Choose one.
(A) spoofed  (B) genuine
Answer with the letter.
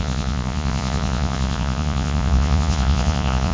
A